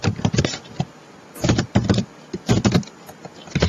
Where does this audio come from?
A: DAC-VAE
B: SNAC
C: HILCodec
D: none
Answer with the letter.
D